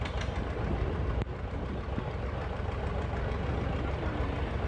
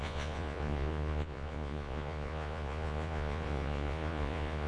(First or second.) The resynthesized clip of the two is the second